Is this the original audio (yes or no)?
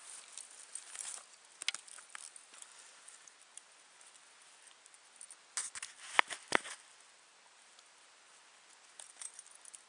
yes